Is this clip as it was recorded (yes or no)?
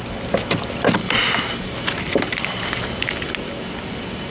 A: yes